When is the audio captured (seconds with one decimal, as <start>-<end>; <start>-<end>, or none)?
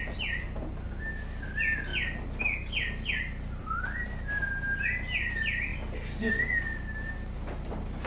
0.0-3.6; 4.4-8.1